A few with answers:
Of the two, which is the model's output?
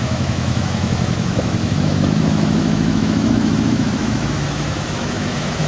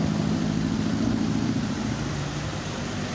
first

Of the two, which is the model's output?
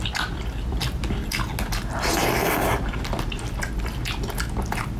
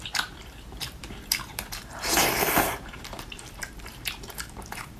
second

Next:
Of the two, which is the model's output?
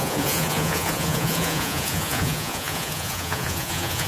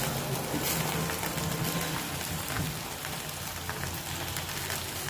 first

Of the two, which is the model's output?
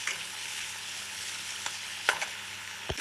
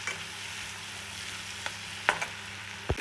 first